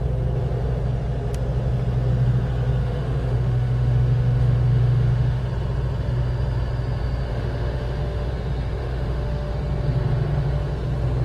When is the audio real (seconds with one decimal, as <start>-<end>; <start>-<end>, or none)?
0.0-2.8; 5.4-7.3; 8.3-8.8; 9.5-11.2